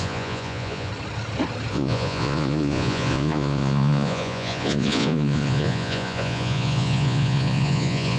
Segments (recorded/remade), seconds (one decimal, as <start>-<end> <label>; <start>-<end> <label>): 0.0-0.9 remade; 0.9-1.7 recorded; 1.7-8.2 remade